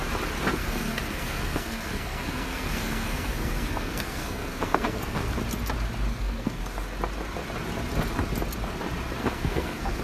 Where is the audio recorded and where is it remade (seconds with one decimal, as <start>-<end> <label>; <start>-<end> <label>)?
0.0-0.5 recorded; 0.5-5.3 remade; 5.3-6.1 recorded; 6.1-6.6 remade; 6.6-9.2 recorded; 9.2-10.0 remade